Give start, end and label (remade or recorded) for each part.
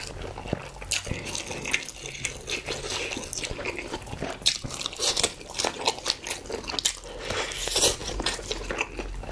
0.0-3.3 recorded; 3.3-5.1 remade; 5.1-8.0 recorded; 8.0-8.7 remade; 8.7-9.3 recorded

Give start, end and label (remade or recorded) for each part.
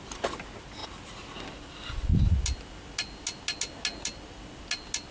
0.0-5.1 recorded